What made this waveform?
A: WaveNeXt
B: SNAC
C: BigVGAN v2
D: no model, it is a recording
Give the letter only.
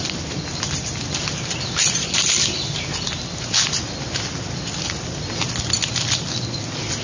D